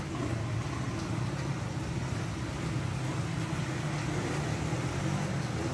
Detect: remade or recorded recorded